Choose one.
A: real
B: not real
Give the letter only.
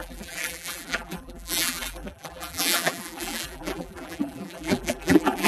B